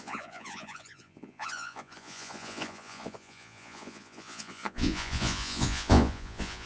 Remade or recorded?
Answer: remade